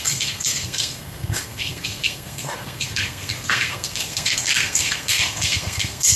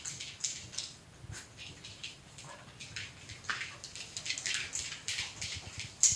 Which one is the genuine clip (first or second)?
second